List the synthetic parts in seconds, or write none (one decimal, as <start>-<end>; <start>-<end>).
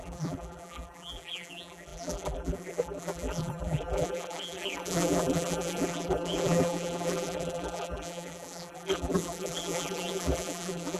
0.0-11.0